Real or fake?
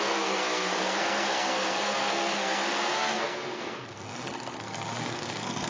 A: fake